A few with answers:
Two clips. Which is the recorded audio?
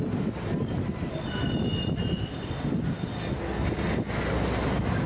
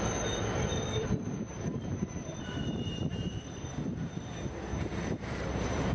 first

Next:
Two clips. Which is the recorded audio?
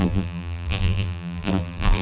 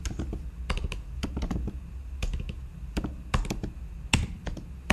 second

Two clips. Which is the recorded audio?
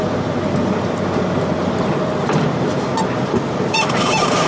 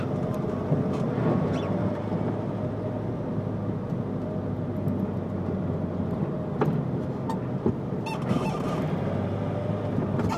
second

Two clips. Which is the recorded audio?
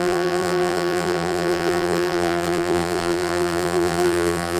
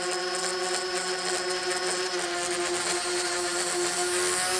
second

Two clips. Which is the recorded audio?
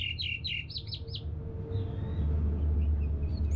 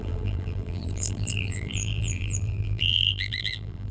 first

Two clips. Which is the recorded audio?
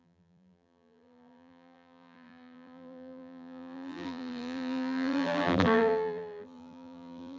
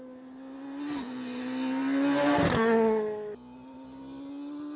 second